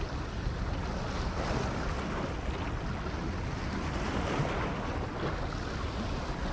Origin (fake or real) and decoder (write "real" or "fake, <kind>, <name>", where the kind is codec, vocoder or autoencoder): real